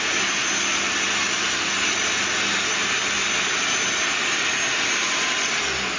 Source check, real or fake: real